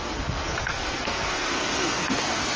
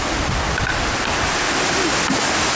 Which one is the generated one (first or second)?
first